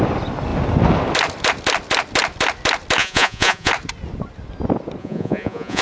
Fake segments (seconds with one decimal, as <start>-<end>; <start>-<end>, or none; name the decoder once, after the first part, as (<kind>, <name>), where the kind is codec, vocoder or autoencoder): 3.0-3.7 (vocoder, Vocos); 5.0-5.8